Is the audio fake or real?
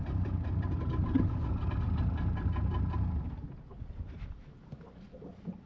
real